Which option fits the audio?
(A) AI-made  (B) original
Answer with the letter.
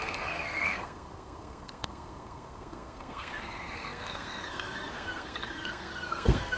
A